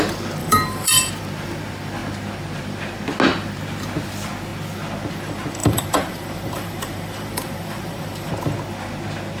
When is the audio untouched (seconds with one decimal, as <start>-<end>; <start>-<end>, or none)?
0.0-0.4; 1.1-5.6; 8.3-9.4